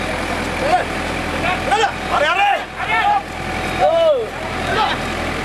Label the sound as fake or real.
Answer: real